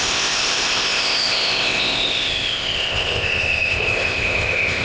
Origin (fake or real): fake